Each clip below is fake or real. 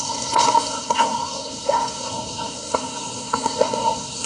fake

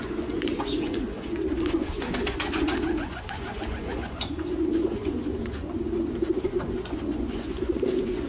fake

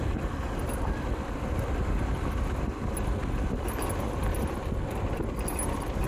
real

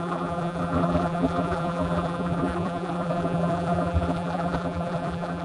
fake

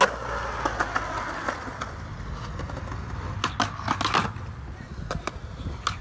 real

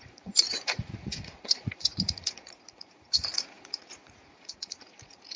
fake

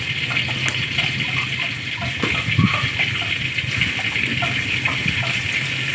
real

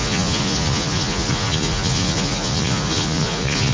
fake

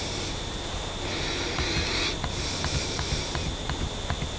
real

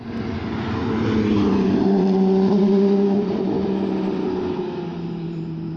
real